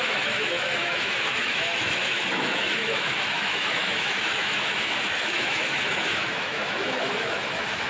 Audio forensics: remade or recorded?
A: remade